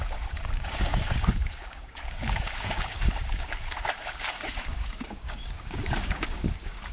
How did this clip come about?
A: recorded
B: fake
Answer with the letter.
B